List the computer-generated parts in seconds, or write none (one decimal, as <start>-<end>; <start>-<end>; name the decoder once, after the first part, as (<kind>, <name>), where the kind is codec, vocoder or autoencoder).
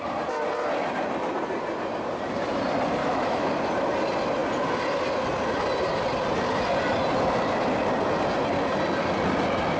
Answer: 3.0-3.5 (autoencoder, DAC-VAE)